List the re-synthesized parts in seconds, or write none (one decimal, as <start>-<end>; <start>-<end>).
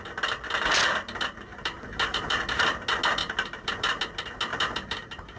1.5-2.4; 3.2-4.0; 4.5-5.4